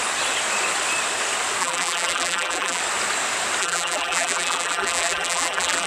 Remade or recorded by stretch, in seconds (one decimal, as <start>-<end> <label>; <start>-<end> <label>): 0.0-1.6 recorded; 1.6-2.8 remade; 2.8-3.6 recorded; 3.6-5.9 remade